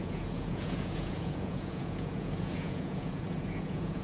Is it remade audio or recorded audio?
remade